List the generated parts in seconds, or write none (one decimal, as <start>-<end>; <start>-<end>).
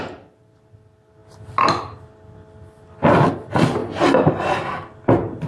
none